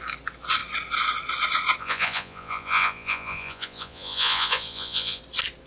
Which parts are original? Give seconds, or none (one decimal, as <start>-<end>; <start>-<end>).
0.0-1.8; 5.2-5.7